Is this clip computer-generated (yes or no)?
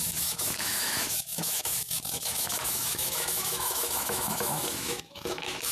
yes